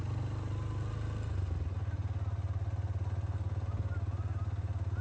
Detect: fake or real real